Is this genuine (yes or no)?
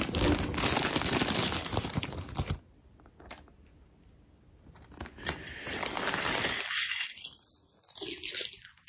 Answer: yes